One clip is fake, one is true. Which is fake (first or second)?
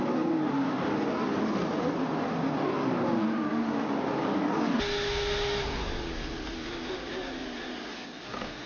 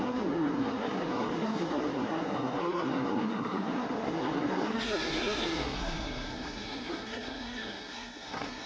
second